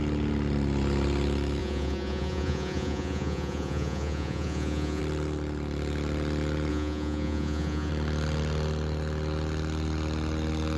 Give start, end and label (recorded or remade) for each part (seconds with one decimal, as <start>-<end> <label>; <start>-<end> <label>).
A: 0.0-1.6 recorded; 1.6-5.0 remade; 5.0-6.7 recorded; 6.7-7.9 remade; 7.9-10.8 recorded

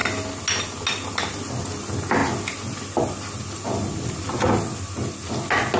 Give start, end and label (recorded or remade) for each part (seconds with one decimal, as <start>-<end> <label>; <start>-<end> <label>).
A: 0.0-5.8 recorded

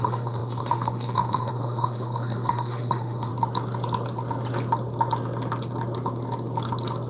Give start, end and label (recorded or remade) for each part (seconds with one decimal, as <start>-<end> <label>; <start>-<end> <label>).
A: 0.0-3.3 remade; 3.3-7.1 recorded

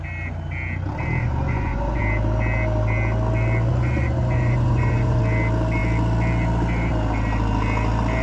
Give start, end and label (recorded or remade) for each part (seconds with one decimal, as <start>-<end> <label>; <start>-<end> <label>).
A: 0.0-1.2 recorded; 1.2-2.0 remade; 2.0-3.7 recorded; 3.7-5.2 remade; 5.2-8.2 recorded

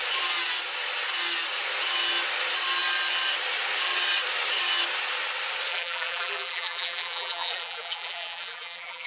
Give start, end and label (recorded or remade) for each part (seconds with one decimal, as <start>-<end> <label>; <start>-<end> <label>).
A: 0.0-5.7 recorded; 5.7-9.1 remade

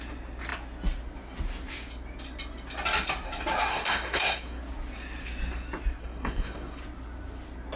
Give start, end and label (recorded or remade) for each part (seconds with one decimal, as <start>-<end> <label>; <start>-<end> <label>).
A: 0.0-3.7 recorded; 3.7-4.6 remade; 4.6-6.0 recorded; 6.0-6.8 remade; 6.8-7.8 recorded

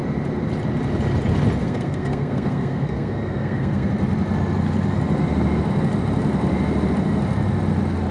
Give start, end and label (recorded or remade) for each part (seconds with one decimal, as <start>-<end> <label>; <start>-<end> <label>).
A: 0.0-1.6 recorded; 1.6-3.9 remade; 3.9-8.1 recorded

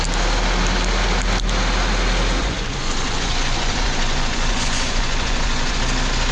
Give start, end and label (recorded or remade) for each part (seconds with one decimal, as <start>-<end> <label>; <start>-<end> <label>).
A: 0.0-2.4 recorded; 2.4-5.8 remade; 5.8-6.3 recorded